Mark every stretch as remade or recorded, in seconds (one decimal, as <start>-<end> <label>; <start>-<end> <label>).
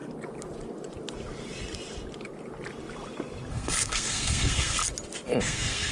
0.0-3.5 recorded; 3.5-4.8 remade; 4.8-5.4 recorded; 5.4-5.9 remade